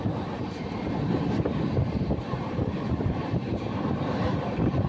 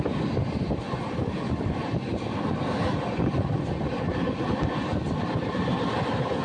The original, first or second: second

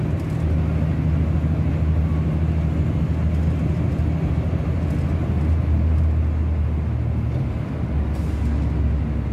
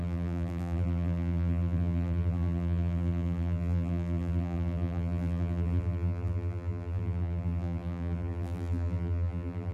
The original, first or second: first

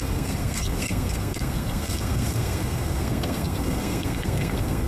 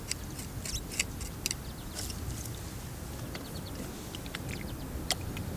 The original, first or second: second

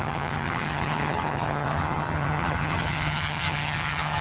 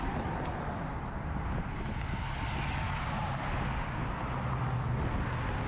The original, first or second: second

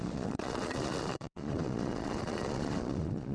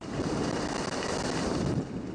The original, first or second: second